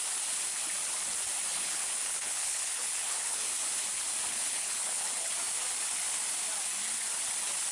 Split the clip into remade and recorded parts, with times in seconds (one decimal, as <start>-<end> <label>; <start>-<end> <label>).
0.0-1.5 recorded; 1.5-3.5 remade; 3.5-4.3 recorded; 4.3-5.3 remade; 5.3-7.7 recorded